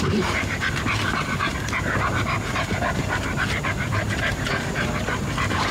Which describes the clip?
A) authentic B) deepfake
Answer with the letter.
B